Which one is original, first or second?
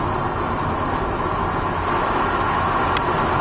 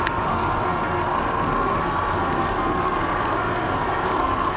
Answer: first